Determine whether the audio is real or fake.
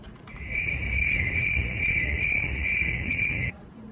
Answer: fake